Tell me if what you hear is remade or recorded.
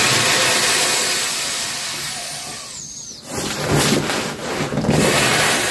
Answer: recorded